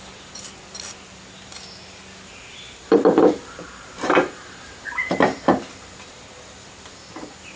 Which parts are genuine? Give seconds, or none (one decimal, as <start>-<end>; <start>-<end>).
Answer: 0.0-2.8; 6.2-7.6